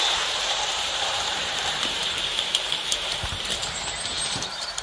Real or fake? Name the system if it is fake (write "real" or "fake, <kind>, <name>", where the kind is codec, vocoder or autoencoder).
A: fake, vocoder, BigVGAN v2